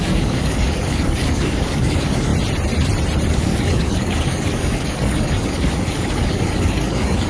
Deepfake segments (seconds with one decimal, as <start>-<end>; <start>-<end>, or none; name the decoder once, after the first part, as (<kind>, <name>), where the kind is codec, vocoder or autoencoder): 0.0-2.3 (codec, DAC); 3.3-7.3